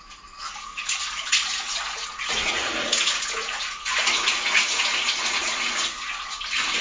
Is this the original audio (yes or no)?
no